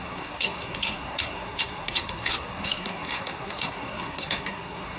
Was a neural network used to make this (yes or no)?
yes